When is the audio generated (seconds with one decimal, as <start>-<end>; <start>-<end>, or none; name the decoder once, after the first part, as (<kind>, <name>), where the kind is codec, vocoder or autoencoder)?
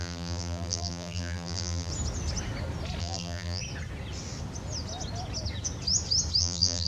0.0-1.9 (vocoder, BigVGAN v2); 3.0-3.6; 6.4-6.9